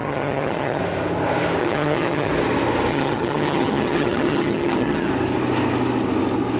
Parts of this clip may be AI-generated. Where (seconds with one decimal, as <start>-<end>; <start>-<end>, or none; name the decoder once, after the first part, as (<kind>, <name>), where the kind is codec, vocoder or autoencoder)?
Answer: 0.0-0.8 (vocoder, HiFi-GAN); 1.6-2.3; 2.9-5.1